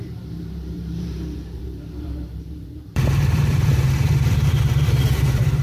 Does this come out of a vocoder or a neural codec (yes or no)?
yes